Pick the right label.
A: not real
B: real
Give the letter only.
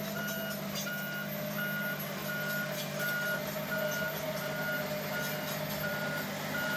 B